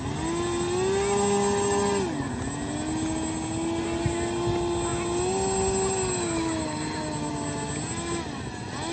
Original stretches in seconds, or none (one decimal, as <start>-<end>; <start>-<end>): 0.0-8.9